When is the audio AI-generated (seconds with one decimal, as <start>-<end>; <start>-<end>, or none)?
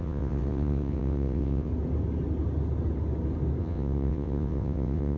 0.0-1.7; 3.6-5.2